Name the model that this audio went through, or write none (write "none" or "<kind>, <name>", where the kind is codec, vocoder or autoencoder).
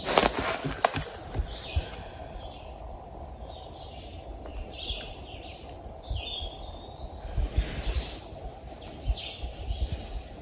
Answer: none